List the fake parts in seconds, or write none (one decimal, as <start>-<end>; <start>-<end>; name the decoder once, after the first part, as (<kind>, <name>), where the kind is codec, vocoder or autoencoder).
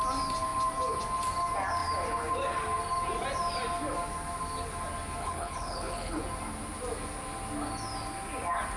5.2-6.2 (codec, HILCodec)